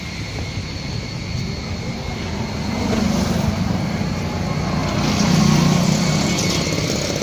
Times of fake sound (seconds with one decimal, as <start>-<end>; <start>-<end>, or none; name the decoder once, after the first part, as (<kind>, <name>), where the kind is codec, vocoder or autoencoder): 0.5-1.1 (vocoder, BigVGAN v2); 4.8-5.4

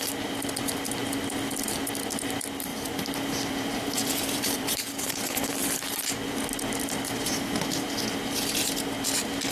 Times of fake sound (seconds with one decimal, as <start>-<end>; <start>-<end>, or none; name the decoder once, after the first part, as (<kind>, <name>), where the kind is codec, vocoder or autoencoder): 2.7-4.9 (vocoder, BigVGAN v2)

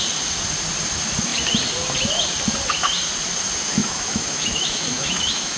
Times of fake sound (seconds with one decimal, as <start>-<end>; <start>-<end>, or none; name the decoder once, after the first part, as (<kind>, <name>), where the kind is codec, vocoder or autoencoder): 3.8-5.6 (autoencoder, DAC-VAE)

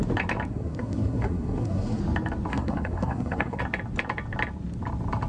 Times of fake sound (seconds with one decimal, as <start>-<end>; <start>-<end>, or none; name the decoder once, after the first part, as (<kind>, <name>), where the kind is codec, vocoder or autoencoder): 0.5-2.0 (codec, SNAC); 2.5-3.6